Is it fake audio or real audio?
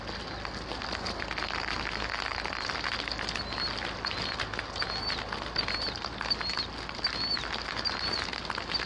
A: real